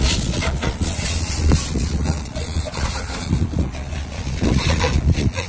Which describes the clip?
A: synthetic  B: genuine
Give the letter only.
A